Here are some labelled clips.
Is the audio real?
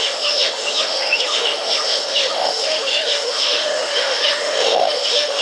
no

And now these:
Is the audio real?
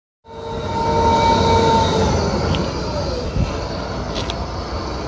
yes